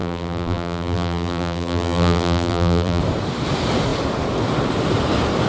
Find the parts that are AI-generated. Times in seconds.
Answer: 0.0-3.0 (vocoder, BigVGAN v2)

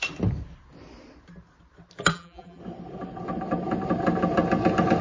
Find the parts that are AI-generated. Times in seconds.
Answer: 2.1-2.6 (vocoder, BigVGAN v2)

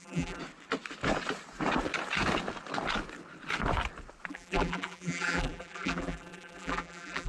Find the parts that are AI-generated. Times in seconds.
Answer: 0.0-0.4 (vocoder, BigVGAN v2); 4.3-7.3

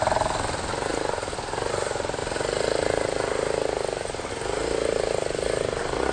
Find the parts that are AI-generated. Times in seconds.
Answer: none

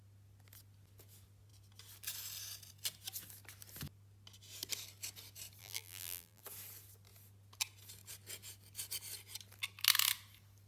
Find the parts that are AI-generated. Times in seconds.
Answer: 5.6-6.4 (vocoder, BigVGAN v2)

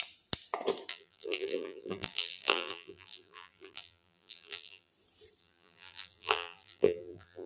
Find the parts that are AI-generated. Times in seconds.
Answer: 0.9-4.9 (vocoder, BigVGAN v2); 5.4-7.5

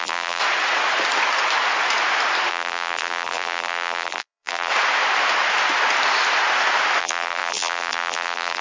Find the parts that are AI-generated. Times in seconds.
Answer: 0.0-0.4 (vocoder, BigVGAN v2); 2.5-4.7; 7.0-8.6

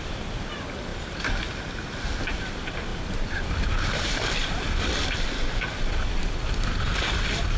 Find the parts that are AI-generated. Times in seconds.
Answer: 0.0-0.9 (vocoder, BigVGAN v2); 1.9-7.6